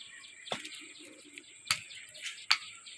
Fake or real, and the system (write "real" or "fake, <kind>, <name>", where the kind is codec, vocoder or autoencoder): real